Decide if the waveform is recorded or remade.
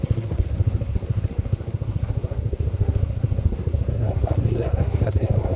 remade